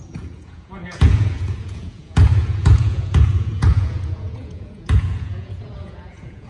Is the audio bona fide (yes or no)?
no